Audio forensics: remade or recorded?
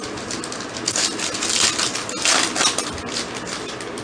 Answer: recorded